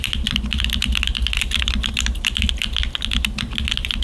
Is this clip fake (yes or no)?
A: no